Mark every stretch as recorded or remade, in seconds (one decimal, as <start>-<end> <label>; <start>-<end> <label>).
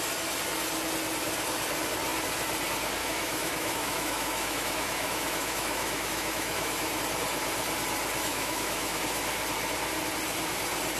0.0-3.0 recorded; 3.0-7.0 remade; 7.0-8.3 recorded; 8.3-9.0 remade; 9.0-11.0 recorded